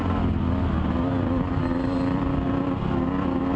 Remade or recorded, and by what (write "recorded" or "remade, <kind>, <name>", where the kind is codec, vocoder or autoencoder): recorded